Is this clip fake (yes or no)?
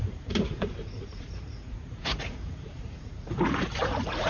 yes